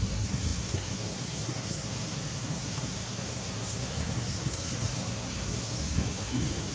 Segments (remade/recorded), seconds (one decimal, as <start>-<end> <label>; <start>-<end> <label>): 0.0-6.7 remade